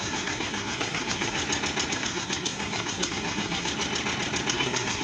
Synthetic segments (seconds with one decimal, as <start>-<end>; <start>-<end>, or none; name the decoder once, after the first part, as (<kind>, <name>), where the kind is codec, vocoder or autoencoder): 0.0-1.4 (codec, SNAC); 1.9-3.7; 4.5-5.0

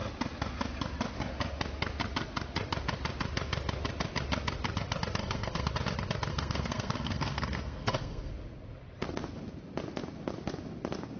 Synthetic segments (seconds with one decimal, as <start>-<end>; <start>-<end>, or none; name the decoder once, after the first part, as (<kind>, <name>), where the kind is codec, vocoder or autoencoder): 5.2-5.7 (codec, SNAC); 6.3-8.3

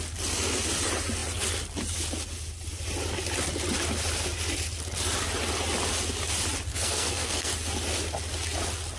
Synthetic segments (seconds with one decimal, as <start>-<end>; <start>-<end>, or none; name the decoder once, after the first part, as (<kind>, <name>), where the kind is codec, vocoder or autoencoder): 6.7-7.5 (codec, SNAC)

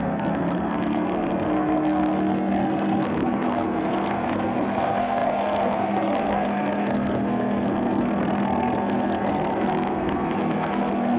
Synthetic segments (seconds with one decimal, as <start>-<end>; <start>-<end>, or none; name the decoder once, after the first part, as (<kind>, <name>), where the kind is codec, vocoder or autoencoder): 0.0-11.2 (codec, SNAC)

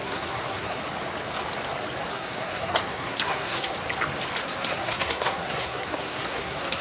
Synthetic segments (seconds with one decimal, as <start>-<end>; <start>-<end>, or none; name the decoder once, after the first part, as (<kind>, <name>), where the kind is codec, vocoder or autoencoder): 0.0-0.8 (codec, SNAC); 2.1-3.7; 4.4-6.8

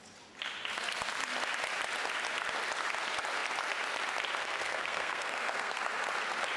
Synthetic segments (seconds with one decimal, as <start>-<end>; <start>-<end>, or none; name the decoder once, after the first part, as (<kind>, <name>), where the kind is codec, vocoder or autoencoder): 4.4-5.8 (codec, SNAC)

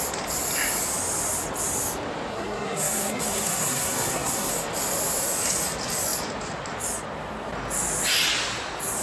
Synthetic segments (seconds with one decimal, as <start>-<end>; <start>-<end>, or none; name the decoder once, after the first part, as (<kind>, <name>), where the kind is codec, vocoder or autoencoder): 2.3-4.5 (codec, SNAC)